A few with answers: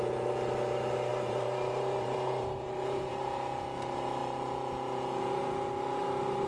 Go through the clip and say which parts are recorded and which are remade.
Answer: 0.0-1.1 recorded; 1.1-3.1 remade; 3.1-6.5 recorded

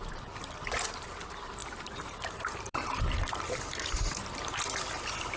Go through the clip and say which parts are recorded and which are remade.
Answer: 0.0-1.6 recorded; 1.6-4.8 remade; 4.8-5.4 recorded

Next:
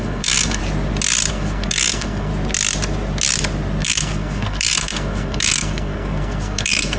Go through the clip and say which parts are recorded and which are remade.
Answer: 0.0-0.6 remade; 0.6-1.3 recorded; 1.3-2.3 remade; 2.3-3.8 recorded; 3.8-7.0 remade

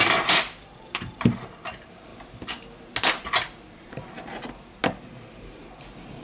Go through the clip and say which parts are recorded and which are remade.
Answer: 0.0-2.1 remade; 2.1-3.1 recorded; 3.1-4.8 remade; 4.8-5.6 recorded; 5.6-6.2 remade

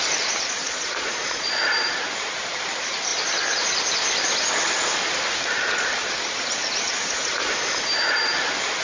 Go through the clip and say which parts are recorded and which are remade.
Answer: 0.0-0.6 recorded; 0.6-1.6 remade; 1.6-8.8 recorded